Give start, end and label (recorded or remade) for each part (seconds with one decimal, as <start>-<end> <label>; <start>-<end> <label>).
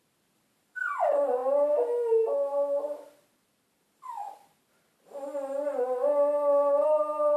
0.0-7.4 recorded